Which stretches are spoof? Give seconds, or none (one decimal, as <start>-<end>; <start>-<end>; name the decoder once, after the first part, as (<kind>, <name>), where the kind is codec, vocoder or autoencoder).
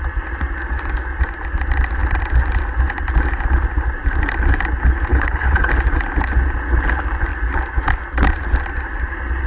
5.1-5.7 (codec, HILCodec)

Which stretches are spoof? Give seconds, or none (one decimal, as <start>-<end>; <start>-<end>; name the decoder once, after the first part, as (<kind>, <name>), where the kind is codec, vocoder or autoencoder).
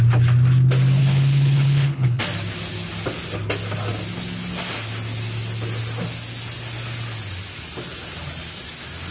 1.0-2.2 (codec, HILCodec)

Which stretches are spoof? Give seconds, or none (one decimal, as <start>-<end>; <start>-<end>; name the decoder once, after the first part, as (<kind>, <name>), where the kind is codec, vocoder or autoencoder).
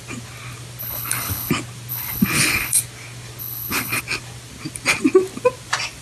0.8-1.5 (codec, HILCodec); 1.9-2.8; 3.4-4.0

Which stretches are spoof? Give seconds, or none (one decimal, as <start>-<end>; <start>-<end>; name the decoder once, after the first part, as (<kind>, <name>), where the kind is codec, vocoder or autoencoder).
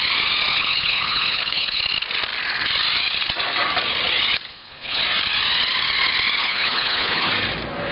0.5-1.8 (codec, HILCodec); 4.5-5.0; 6.4-7.3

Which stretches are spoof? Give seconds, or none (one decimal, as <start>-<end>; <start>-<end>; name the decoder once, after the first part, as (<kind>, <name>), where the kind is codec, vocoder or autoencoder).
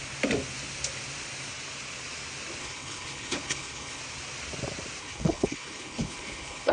2.6-4.0 (codec, HILCodec); 5.0-6.7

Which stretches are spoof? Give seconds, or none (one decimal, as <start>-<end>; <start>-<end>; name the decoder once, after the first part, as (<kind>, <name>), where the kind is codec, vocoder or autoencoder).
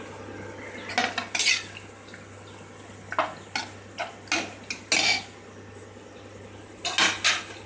none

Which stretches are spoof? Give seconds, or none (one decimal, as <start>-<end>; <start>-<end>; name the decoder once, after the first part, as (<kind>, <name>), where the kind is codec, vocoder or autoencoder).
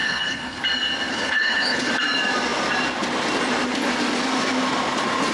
0.0-0.6 (codec, HILCodec); 1.1-1.9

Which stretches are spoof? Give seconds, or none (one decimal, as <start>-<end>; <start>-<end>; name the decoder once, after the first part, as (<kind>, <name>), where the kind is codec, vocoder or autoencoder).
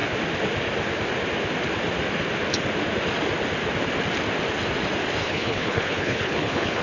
5.2-6.8 (codec, HILCodec)